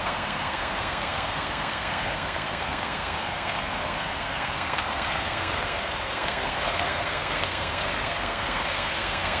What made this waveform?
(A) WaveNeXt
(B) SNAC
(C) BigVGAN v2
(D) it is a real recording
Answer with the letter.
B